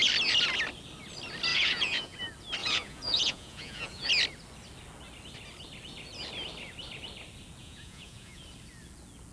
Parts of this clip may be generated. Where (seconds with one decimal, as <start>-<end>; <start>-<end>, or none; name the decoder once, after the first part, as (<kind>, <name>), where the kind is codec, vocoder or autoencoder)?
1.5-2.2 (vocoder, Vocos); 2.6-4.1; 7.6-8.4